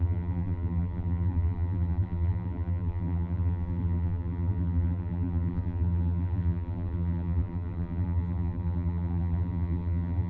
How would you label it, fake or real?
fake